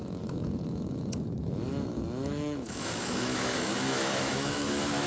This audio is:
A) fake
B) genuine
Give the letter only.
A